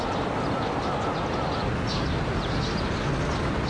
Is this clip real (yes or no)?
yes